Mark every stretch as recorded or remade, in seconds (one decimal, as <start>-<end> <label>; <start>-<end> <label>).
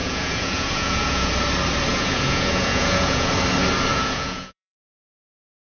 0.0-1.3 remade; 1.3-1.9 recorded; 1.9-3.3 remade; 3.3-3.9 recorded; 3.9-4.8 remade; 4.8-5.7 recorded